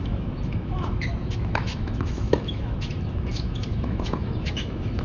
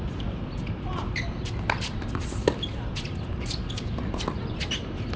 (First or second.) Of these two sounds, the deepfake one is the first